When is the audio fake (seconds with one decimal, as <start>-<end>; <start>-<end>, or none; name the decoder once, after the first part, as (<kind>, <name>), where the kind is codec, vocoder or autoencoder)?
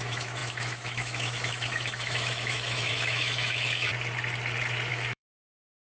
0.0-3.9 (autoencoder, DAC-VAE); 4.9-5.8